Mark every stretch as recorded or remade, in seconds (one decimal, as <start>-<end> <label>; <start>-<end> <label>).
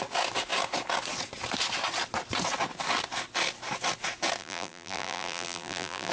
0.0-4.4 recorded; 4.4-6.1 remade